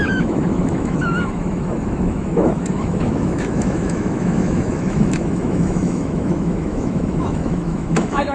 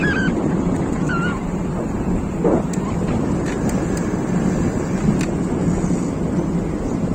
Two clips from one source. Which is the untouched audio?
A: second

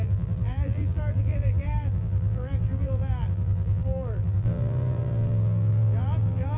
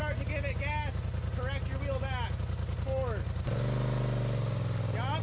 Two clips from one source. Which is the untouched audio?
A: second